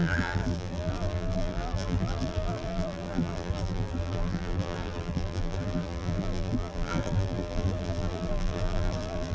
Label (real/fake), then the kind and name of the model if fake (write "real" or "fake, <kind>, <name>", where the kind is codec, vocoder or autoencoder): fake, vocoder, BigVGAN v2